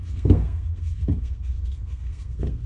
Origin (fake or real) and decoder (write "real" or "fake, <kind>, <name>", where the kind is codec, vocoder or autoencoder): fake, codec, SNAC